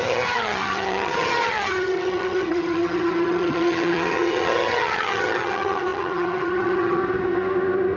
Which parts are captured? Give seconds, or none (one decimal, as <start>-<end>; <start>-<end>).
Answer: 7.0-8.0